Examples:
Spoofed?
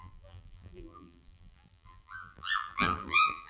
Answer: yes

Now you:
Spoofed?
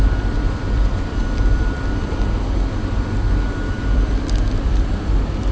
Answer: yes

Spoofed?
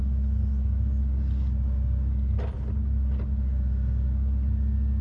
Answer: no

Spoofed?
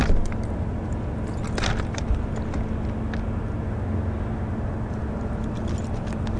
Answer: no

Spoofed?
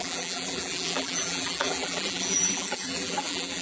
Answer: yes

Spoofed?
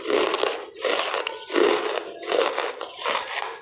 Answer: no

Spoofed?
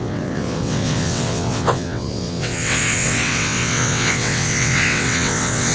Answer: yes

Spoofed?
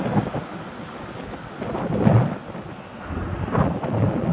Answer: no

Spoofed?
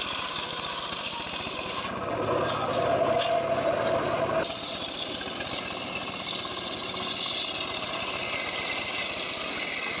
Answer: no